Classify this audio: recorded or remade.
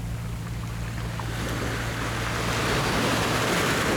recorded